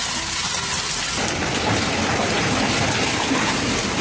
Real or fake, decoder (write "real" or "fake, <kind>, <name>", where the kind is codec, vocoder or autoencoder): real